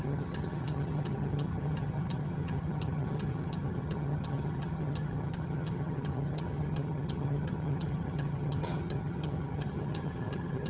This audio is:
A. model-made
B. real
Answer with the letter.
A